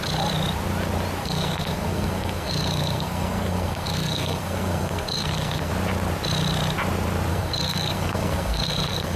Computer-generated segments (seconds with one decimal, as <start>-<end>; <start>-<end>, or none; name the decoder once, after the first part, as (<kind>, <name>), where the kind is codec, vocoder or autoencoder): 1.2-5.7 (codec, SNAC); 7.3-9.2